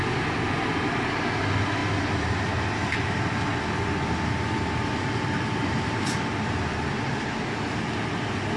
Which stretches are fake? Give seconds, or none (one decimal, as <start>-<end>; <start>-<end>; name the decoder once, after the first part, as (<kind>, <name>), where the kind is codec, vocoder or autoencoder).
none